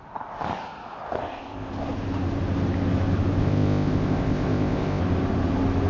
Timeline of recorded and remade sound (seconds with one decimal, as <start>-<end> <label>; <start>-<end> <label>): 0.0-1.2 recorded; 1.2-1.7 remade; 1.7-3.4 recorded; 3.4-5.0 remade; 5.0-5.9 recorded